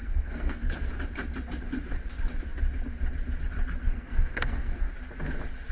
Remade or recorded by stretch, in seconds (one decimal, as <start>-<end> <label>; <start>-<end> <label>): 0.0-0.9 remade; 0.9-3.8 recorded; 3.8-4.9 remade; 4.9-5.7 recorded